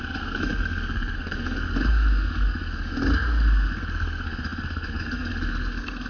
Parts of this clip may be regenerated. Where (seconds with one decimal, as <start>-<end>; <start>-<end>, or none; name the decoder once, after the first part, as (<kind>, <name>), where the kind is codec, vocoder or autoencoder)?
0.0-6.1 (codec, SNAC)